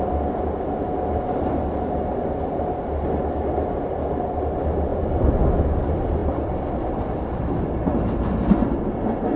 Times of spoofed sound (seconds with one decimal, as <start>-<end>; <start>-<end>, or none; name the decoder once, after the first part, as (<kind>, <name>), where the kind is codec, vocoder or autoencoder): none